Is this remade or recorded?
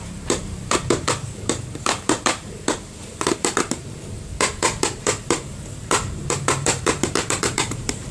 remade